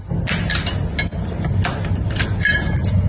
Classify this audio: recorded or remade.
recorded